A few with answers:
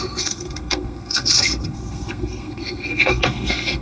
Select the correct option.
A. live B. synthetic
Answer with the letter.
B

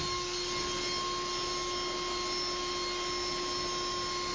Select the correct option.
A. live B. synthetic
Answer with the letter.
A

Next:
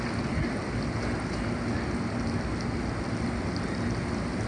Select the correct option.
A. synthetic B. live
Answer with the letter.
B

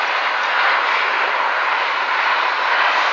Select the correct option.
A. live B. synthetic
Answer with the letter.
A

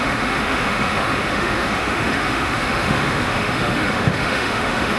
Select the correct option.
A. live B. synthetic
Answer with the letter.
B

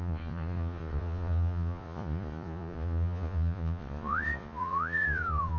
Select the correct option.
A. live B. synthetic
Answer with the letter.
B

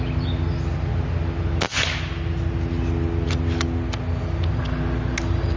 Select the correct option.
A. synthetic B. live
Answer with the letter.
B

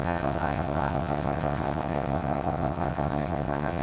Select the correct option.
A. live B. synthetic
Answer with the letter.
B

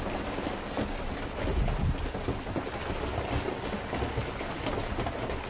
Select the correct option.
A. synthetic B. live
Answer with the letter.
B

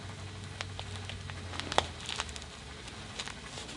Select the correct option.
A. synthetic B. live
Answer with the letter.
B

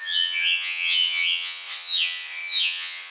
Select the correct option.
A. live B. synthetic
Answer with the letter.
B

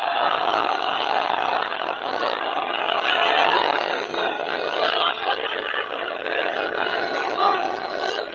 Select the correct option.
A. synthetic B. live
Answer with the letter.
A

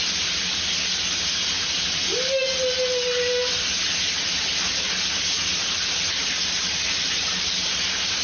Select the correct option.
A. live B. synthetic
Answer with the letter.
A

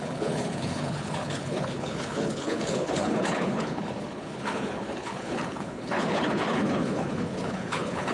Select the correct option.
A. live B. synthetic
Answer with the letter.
B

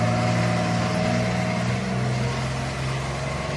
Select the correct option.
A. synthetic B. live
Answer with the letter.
B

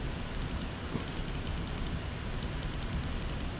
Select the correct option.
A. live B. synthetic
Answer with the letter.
B